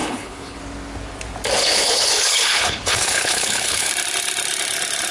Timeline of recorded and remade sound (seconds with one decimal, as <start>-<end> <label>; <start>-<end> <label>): 0.0-0.6 remade; 0.6-1.6 recorded; 1.6-3.9 remade; 3.9-5.1 recorded